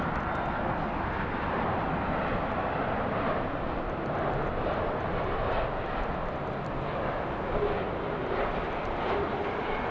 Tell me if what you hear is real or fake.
real